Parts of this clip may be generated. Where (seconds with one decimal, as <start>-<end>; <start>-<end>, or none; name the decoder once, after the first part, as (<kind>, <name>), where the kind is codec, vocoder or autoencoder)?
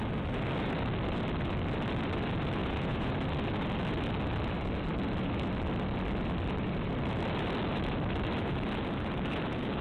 2.6-3.1 (vocoder, Vocos)